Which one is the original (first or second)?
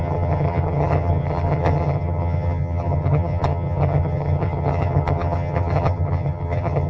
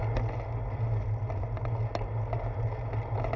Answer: second